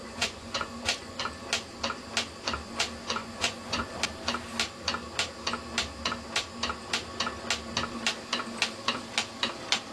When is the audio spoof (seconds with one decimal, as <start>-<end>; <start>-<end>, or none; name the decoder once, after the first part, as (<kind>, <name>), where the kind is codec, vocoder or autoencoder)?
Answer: 0.0-1.2 (vocoder, Vocos); 3.2-3.9